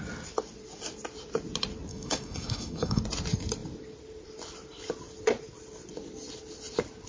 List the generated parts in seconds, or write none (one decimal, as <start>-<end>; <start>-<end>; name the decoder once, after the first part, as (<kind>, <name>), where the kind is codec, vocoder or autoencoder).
1.9-3.0 (autoencoder, DAC-VAE)